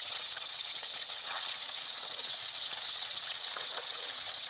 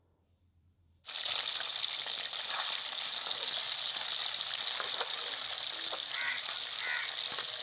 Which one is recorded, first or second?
second